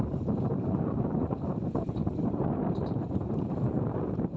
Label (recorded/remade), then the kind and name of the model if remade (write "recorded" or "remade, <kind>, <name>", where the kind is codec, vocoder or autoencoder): remade, vocoder, BigVGAN v2